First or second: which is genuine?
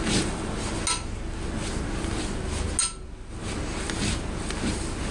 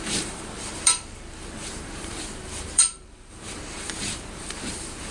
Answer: first